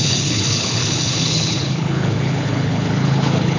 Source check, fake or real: fake